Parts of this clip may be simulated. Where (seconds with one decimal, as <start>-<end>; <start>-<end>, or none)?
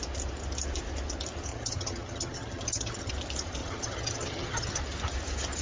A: 1.5-3.1; 3.6-4.8